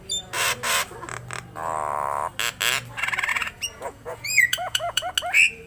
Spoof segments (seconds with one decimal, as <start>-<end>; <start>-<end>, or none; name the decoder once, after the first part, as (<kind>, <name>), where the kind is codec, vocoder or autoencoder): 3.3-5.1 (vocoder, Vocos)